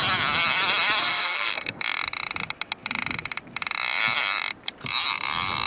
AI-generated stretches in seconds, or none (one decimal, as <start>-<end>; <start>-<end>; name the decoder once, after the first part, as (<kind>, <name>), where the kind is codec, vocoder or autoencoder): 1.0-1.8 (codec, SNAC)